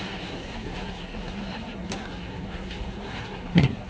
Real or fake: fake